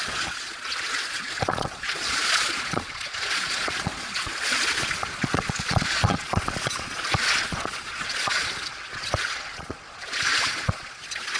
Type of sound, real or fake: fake